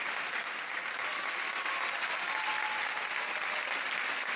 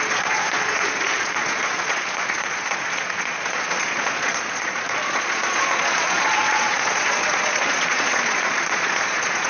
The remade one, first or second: second